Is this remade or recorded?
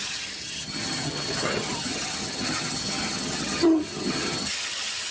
remade